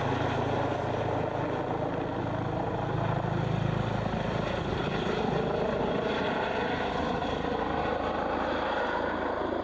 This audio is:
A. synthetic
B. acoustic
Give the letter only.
B